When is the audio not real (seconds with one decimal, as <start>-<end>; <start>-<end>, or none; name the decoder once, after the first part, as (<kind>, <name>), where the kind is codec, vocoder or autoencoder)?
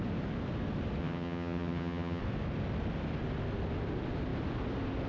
1.0-2.2 (vocoder, HiFi-GAN)